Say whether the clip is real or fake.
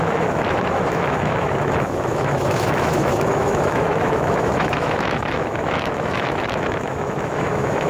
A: fake